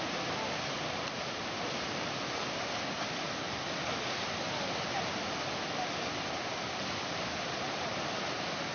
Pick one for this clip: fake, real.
real